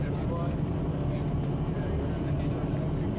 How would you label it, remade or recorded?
recorded